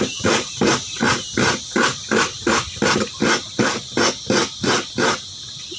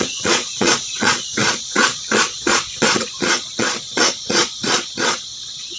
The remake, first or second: second